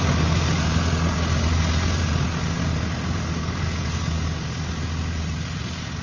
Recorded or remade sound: recorded